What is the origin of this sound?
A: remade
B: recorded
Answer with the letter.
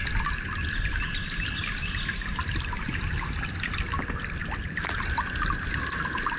B